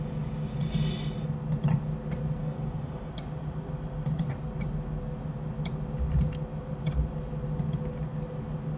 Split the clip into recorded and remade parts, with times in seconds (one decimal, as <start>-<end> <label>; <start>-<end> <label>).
0.0-2.4 recorded; 2.4-3.1 remade; 3.1-8.8 recorded